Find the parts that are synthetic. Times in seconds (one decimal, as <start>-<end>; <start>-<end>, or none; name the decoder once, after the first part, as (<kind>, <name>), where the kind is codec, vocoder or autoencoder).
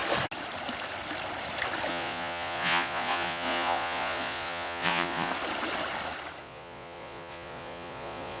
1.9-5.3 (vocoder, Vocos); 6.4-8.4